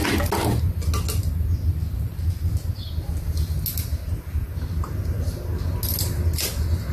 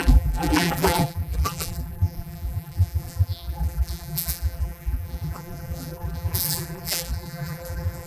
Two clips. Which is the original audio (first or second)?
first